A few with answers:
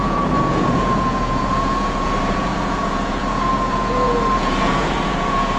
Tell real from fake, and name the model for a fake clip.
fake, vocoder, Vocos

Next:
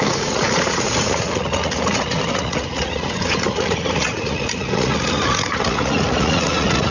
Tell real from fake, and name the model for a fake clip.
fake, vocoder, Vocos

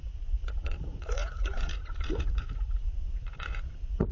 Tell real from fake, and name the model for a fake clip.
fake, vocoder, Vocos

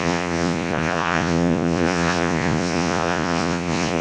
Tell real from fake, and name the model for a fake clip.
fake, vocoder, Vocos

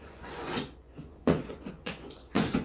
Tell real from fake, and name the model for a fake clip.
fake, vocoder, Vocos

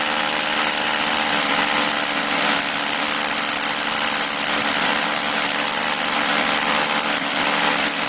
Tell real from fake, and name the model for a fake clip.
real